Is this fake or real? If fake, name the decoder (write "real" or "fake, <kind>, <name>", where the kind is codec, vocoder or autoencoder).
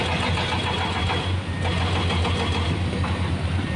real